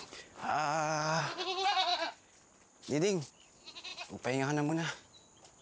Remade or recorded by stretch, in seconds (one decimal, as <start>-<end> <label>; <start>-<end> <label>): 0.0-5.6 recorded

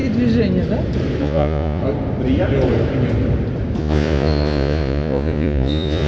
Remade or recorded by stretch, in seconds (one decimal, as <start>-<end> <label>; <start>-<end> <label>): 0.0-1.2 recorded; 1.2-1.8 remade; 1.8-3.8 recorded; 3.8-6.1 remade

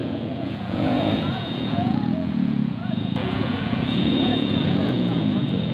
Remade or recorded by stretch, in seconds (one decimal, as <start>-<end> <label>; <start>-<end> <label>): 0.0-5.7 remade

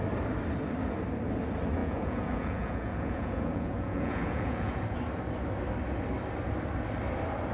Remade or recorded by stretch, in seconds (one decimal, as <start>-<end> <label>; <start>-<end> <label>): 0.0-1.8 recorded; 1.8-4.8 remade; 4.8-7.5 recorded

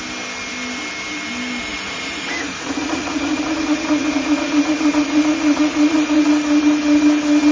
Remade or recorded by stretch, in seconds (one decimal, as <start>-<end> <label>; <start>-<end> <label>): 0.0-1.7 recorded; 1.7-6.2 remade; 6.2-7.5 recorded

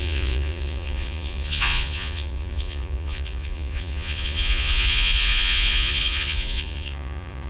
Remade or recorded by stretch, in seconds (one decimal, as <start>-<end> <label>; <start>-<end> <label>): 0.0-7.5 remade

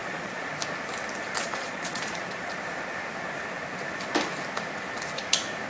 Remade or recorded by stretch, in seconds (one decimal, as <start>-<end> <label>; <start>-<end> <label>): 0.0-0.5 remade; 0.5-1.4 recorded; 1.4-2.5 remade; 2.5-5.7 recorded

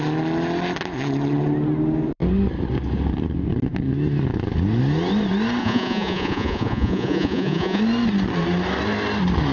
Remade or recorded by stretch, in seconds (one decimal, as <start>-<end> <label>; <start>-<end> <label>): 0.0-5.6 recorded; 5.6-7.8 remade; 7.8-9.5 recorded